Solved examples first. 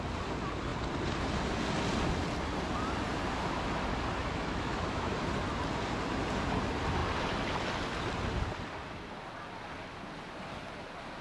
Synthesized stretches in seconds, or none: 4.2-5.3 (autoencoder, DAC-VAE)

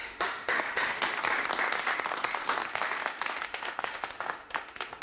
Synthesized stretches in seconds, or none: 0.0-1.0 (autoencoder, DAC-VAE); 2.7-5.0

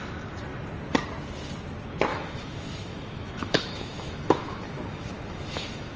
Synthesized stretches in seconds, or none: 2.1-6.0 (autoencoder, DAC-VAE)

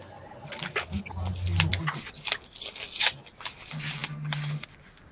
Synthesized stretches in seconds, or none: none